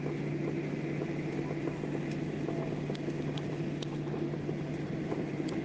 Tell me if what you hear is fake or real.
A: real